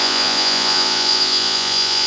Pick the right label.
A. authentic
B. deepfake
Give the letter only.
B